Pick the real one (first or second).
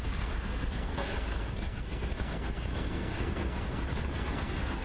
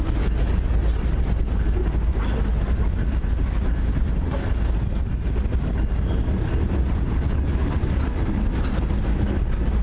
second